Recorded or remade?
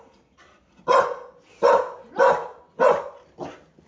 recorded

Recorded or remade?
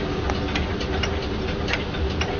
recorded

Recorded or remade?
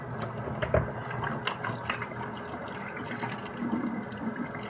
recorded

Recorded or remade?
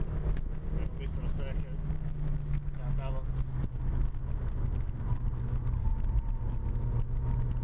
recorded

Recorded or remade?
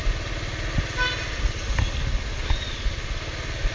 recorded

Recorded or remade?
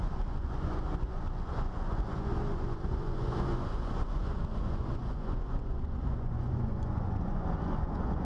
remade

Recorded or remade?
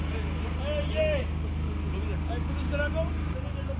recorded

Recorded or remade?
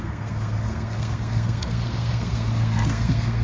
remade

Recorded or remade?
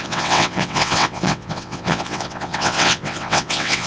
remade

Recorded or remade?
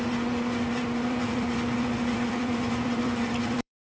remade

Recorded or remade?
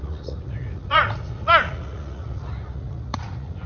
remade